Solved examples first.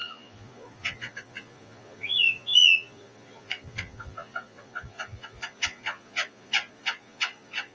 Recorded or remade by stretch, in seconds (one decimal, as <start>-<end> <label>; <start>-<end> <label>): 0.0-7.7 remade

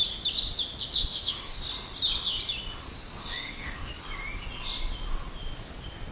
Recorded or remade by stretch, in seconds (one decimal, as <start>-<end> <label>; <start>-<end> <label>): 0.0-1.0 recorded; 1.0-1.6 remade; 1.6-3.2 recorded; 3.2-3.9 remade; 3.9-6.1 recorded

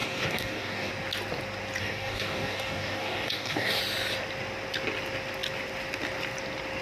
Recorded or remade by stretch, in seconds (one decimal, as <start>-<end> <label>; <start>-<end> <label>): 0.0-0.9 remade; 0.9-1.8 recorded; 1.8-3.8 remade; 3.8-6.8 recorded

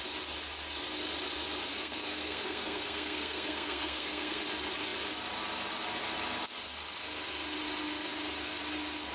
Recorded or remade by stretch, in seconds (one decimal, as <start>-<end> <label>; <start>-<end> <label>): 0.0-1.7 recorded; 1.7-4.4 remade; 4.4-9.1 recorded